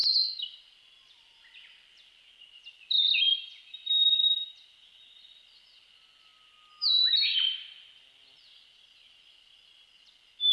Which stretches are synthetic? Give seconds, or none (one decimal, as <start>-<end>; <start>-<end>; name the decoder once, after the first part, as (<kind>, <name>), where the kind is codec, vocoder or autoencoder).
none